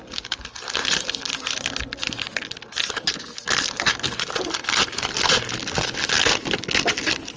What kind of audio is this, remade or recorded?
recorded